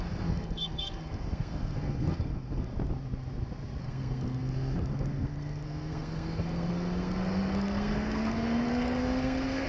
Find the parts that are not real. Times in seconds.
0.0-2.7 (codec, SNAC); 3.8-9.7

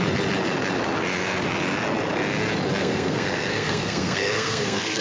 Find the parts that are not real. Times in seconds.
2.8-5.0 (codec, SNAC)

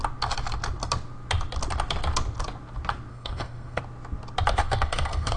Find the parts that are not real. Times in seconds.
3.1-3.8 (codec, SNAC); 4.6-5.4

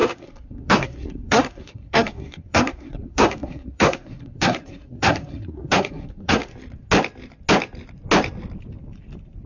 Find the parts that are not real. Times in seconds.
0.0-6.5 (codec, SNAC)

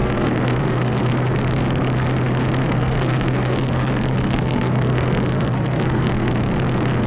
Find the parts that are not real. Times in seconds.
0.0-1.1 (codec, SNAC); 2.6-6.3

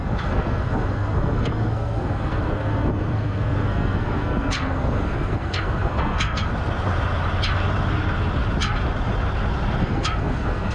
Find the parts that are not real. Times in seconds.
0.0-6.5 (codec, SNAC); 9.8-10.7

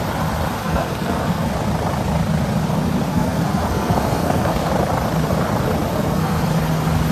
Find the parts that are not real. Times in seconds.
0.6-1.5 (codec, SNAC); 3.1-4.7; 5.9-6.4